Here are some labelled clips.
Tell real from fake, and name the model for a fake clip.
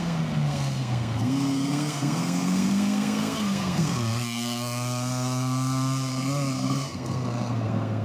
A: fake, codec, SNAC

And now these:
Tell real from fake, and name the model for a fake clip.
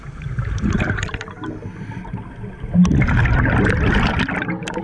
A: real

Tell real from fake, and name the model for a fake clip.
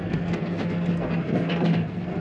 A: fake, codec, SNAC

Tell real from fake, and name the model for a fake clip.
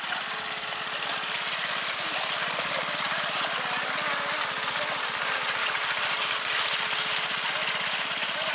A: real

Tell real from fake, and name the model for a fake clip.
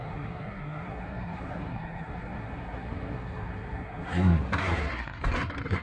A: fake, codec, SNAC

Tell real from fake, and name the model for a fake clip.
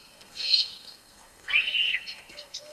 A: fake, codec, SNAC